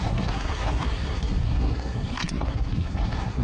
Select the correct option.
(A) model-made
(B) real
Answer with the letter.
A